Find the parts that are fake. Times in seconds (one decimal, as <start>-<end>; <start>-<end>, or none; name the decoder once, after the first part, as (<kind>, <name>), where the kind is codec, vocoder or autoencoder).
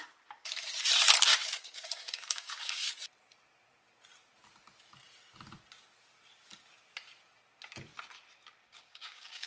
1.3-2.9 (codec, DAC); 8.6-9.5